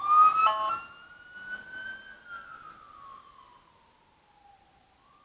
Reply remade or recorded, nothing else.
recorded